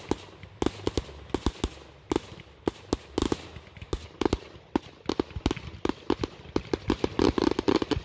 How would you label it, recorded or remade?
recorded